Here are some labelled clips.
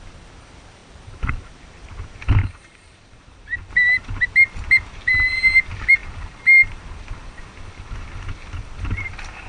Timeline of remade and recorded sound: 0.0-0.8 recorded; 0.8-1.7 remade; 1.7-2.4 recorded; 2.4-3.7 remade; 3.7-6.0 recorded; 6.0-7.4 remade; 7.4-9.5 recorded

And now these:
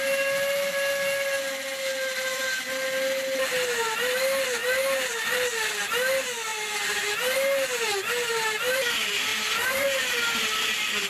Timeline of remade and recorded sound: 0.0-11.1 recorded

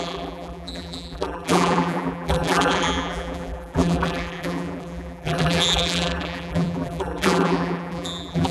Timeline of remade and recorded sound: 0.0-8.5 remade

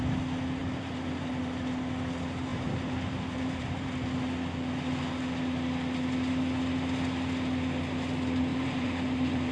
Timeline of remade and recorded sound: 0.0-0.6 recorded; 0.6-1.4 remade; 1.4-2.5 recorded; 2.5-3.9 remade; 3.9-8.5 recorded; 8.5-9.5 remade

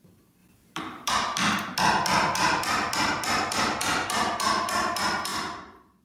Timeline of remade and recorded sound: 0.0-0.4 recorded; 0.4-1.1 remade; 1.1-3.8 recorded; 3.8-4.3 remade; 4.3-5.3 recorded; 5.3-6.0 remade

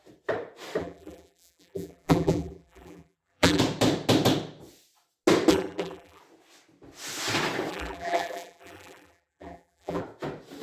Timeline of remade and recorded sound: 0.0-0.8 recorded; 0.8-3.6 remade; 3.6-5.5 recorded; 5.5-6.2 remade; 6.2-7.7 recorded; 7.7-10.0 remade; 10.0-10.6 recorded